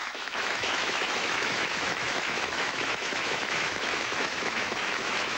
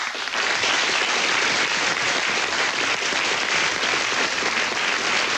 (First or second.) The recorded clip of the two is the second